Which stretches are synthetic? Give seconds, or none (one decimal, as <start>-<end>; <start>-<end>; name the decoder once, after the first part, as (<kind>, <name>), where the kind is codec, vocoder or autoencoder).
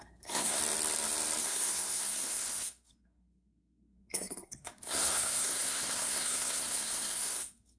0.0-0.6 (codec, SNAC); 1.4-7.8